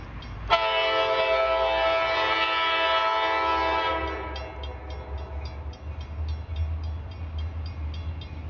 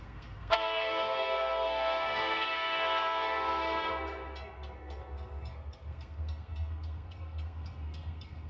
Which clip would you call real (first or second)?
first